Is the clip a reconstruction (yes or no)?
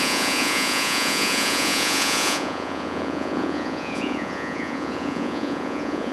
yes